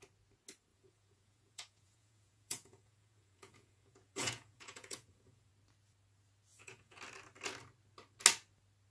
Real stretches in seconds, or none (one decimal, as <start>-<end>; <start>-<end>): 0.0-0.7; 5.5-6.5; 7.0-8.9